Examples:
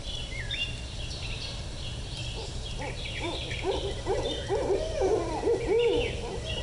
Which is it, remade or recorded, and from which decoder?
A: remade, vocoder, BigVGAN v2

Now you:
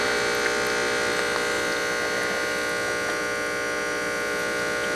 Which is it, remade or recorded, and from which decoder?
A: recorded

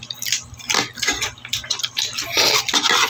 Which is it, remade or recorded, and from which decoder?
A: recorded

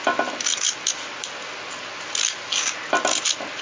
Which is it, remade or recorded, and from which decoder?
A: recorded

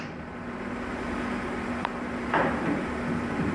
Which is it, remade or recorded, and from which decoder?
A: remade, vocoder, BigVGAN v2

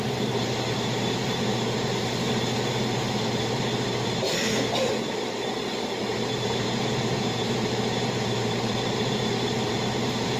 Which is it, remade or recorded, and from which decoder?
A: remade, vocoder, BigVGAN v2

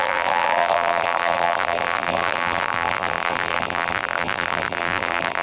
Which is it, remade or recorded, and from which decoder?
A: remade, vocoder, BigVGAN v2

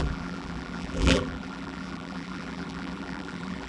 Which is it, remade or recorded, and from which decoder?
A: remade, vocoder, BigVGAN v2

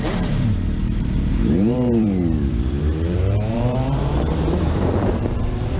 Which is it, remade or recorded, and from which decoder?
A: remade, vocoder, BigVGAN v2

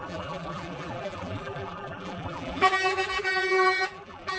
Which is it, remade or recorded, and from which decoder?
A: remade, vocoder, BigVGAN v2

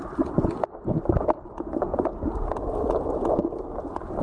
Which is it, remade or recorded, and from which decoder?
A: recorded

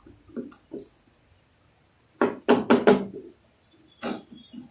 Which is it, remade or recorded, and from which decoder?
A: recorded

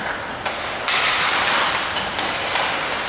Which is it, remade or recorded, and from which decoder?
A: recorded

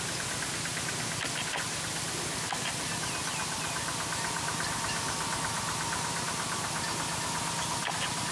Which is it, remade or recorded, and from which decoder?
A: recorded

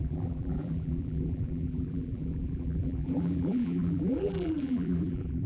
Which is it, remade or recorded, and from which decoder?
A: remade, vocoder, BigVGAN v2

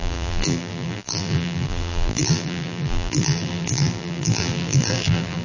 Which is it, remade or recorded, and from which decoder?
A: remade, vocoder, BigVGAN v2